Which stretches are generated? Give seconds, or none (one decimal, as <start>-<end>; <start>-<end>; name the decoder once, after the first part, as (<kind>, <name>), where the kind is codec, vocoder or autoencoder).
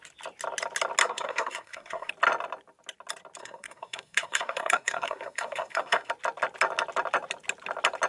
1.0-2.1 (codec, SNAC); 3.4-6.1